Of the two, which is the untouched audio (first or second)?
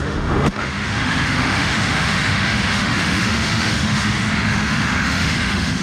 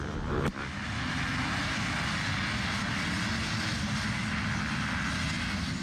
second